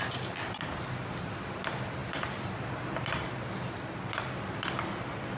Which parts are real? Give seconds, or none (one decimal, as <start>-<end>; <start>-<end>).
0.0-5.4